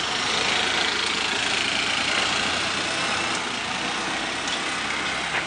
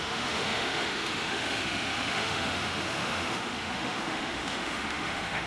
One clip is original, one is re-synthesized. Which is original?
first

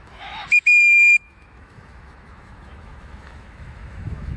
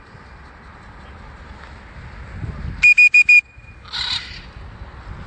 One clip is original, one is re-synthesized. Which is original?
second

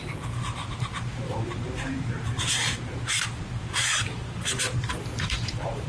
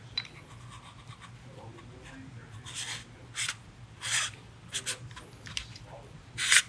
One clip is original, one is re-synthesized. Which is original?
second